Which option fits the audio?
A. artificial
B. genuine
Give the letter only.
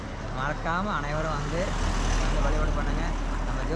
B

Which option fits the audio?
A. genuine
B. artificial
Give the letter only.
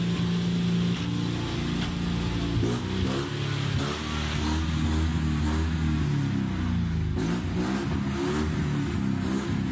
A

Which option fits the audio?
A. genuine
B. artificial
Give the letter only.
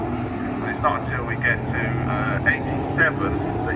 A